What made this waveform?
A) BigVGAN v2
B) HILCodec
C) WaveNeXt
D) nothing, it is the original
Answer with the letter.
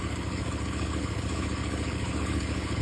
B